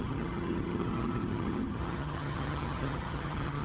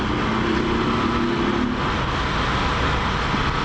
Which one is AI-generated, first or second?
first